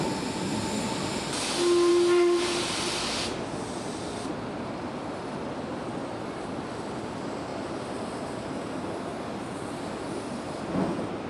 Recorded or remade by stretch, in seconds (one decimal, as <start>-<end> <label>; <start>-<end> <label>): 0.0-11.3 recorded